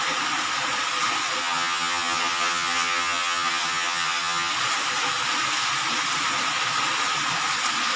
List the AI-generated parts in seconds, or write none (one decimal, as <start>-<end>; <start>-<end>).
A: 1.4-4.5